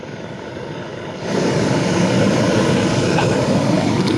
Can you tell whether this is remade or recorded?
remade